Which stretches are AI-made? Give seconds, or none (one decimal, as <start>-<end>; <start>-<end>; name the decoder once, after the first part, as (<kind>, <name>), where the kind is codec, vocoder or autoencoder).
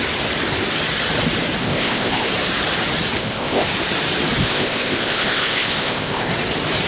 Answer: 1.6-2.3 (codec, ZipCodec); 3.2-3.7; 4.4-6.3